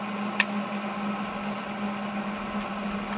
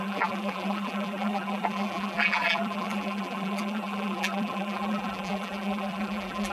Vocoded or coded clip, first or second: second